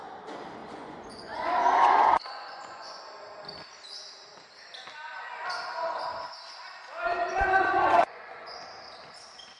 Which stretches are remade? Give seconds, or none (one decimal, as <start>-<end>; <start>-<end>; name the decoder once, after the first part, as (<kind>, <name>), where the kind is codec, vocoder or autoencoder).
0.6-3.0 (vocoder, Vocos); 7.1-8.6